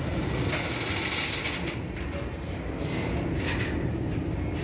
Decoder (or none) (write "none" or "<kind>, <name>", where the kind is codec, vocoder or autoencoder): none